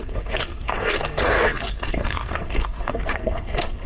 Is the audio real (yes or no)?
no